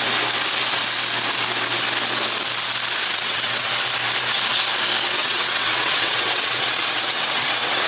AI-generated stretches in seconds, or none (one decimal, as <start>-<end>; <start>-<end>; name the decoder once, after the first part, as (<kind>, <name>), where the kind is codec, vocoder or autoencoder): 3.1-3.7 (vocoder, WaveNeXt); 5.2-7.9